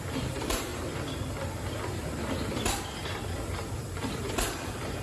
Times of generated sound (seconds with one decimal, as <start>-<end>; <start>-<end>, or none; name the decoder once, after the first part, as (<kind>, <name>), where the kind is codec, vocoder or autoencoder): 0.0-0.7 (vocoder, BigVGAN v2); 3.7-5.0

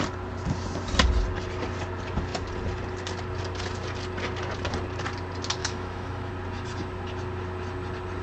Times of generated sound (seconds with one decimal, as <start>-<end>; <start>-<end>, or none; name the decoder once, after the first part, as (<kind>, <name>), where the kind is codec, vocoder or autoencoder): 5.6-6.3 (autoencoder, DAC-VAE)

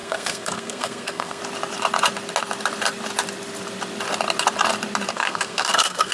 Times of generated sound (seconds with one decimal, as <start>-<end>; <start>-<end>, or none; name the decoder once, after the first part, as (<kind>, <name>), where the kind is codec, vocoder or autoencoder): 0.0-1.4 (codec, SNAC); 5.1-6.1

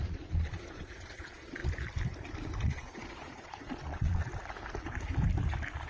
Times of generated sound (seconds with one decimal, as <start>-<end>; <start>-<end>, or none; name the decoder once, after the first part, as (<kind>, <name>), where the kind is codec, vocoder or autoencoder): 0.0-1.6 (vocoder, Vocos); 2.6-4.3

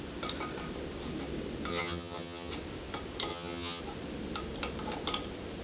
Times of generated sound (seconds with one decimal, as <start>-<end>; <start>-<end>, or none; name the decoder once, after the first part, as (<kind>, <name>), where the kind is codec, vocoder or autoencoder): 1.7-2.5 (vocoder, HiFi-GAN); 3.3-3.8

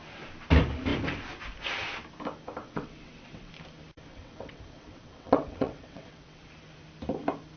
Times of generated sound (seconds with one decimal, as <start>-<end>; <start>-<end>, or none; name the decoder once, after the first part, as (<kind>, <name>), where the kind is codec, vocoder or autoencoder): 2.6-3.5 (vocoder, WaveNeXt); 4.1-6.4

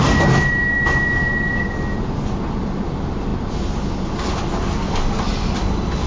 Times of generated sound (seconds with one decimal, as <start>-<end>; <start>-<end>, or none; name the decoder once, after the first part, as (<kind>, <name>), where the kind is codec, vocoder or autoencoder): none

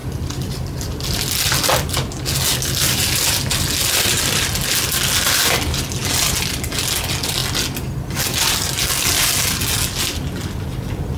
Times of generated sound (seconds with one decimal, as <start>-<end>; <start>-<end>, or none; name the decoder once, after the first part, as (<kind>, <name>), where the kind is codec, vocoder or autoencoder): none